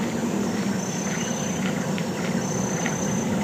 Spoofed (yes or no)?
no